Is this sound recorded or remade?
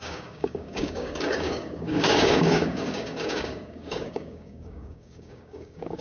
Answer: remade